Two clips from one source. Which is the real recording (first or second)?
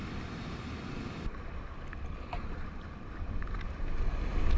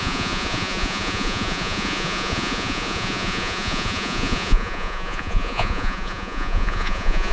first